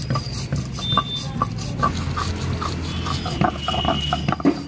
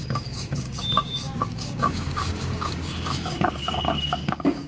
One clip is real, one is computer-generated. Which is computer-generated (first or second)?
second